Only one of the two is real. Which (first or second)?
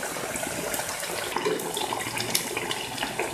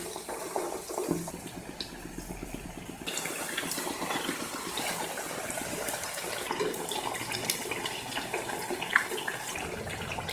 first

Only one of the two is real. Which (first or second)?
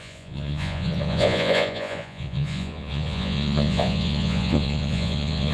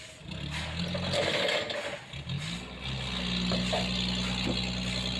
second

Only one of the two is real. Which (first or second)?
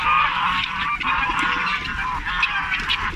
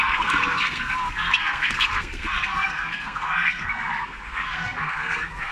first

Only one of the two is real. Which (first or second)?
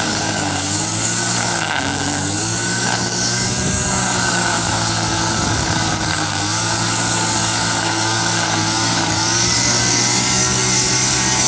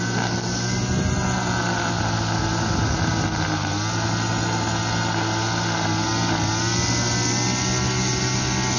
second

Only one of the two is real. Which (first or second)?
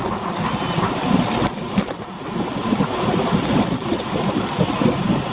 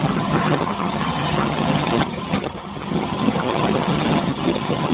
first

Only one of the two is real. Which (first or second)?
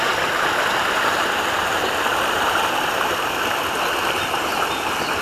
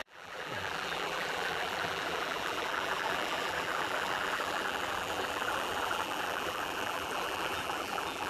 first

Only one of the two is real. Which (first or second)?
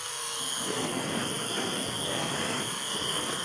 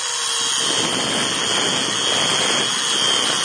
second